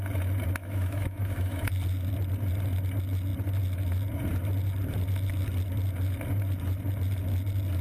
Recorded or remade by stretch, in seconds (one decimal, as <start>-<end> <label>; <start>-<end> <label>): 0.0-0.6 recorded; 0.6-1.7 remade; 1.7-7.8 recorded